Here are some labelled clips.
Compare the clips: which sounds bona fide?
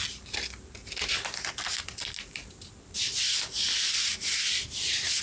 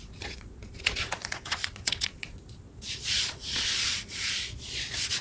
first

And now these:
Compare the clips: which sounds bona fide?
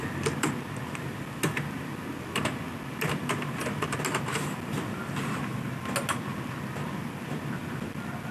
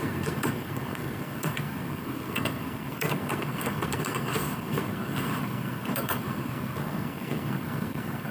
first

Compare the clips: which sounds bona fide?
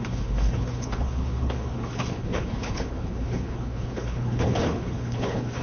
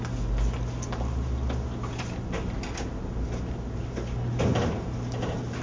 second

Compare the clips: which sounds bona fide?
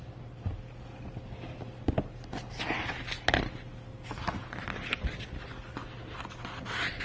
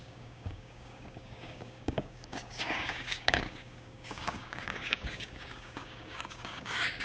first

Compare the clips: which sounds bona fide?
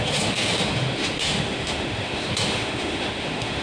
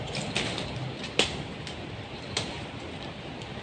second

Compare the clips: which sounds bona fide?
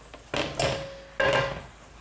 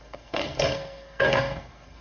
first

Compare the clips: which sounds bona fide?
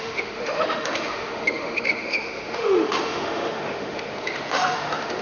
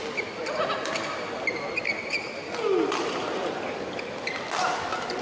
second